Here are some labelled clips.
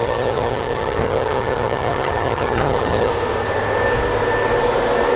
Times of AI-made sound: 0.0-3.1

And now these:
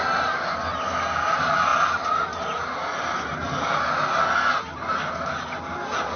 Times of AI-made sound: none

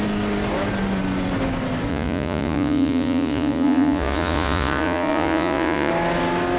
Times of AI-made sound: 1.9-5.9